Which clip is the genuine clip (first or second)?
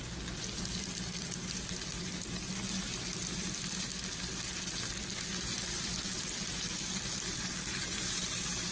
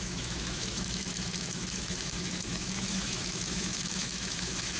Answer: first